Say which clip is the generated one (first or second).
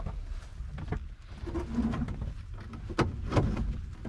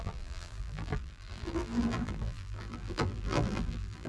second